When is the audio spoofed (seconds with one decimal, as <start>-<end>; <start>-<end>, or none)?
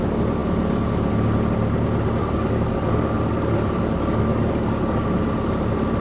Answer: 2.2-4.5